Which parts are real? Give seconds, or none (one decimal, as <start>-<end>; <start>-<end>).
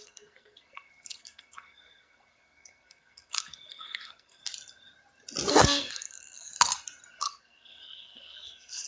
4.4-5.5; 6.5-7.2